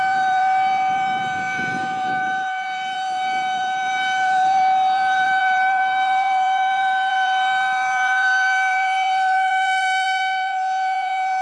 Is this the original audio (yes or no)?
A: no